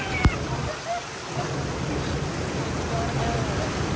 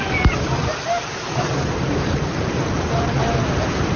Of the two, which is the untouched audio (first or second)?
first